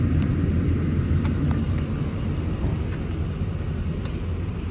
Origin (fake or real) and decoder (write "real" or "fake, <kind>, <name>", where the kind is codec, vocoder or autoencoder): real